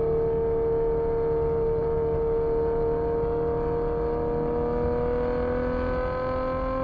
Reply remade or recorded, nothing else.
recorded